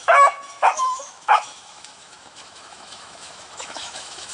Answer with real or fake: fake